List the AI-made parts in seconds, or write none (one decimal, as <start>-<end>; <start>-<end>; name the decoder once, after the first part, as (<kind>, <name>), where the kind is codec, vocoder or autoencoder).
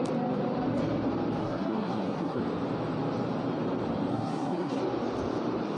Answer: 1.4-2.4 (codec, SNAC); 4.1-4.8